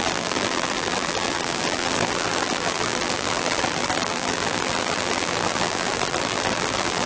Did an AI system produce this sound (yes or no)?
yes